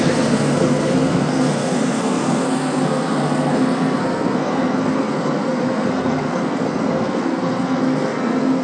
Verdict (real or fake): fake